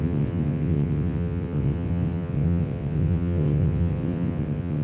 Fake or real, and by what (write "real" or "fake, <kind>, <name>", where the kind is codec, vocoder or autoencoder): fake, vocoder, WaveNeXt